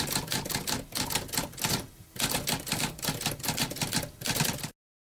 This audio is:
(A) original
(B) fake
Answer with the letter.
A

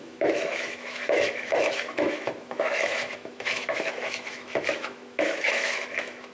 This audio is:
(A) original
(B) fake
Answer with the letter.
B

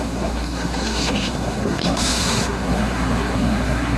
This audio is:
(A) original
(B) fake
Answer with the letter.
B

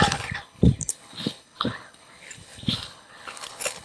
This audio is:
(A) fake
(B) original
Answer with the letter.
A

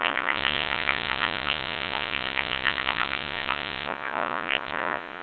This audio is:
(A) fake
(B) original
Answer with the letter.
A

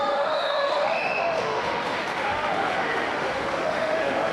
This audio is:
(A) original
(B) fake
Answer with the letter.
B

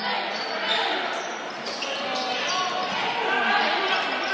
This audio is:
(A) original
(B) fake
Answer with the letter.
A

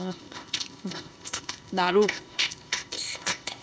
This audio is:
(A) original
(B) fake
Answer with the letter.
B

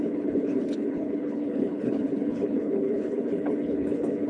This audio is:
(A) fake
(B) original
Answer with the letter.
A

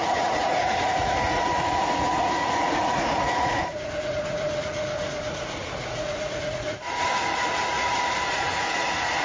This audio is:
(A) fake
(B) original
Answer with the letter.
A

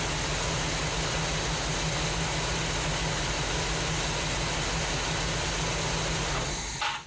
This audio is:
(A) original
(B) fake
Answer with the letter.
A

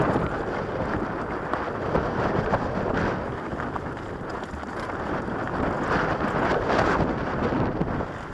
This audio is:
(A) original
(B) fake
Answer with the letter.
A